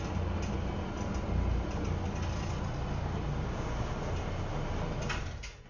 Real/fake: real